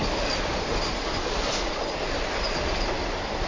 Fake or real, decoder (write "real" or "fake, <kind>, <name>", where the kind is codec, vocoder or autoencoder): real